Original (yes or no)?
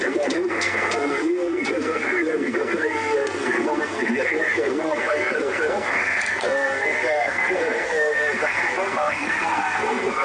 no